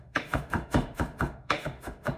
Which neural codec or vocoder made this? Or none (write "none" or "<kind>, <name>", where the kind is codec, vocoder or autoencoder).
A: autoencoder, DAC-VAE